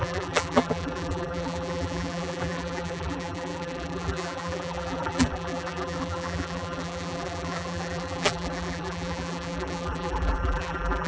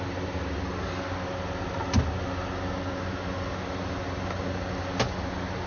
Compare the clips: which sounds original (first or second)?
second